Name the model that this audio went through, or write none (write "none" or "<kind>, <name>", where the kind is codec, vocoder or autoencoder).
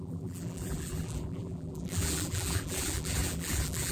vocoder, BigVGAN v2